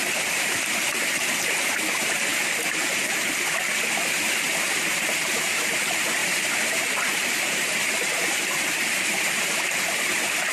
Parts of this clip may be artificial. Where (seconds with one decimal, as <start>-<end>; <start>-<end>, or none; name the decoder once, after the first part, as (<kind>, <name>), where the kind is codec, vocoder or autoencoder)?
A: 6.2-9.6 (vocoder, BigVGAN v2)